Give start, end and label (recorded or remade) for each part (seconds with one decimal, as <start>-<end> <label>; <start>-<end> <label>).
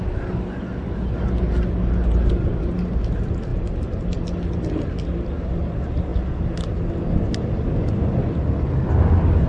0.0-9.5 recorded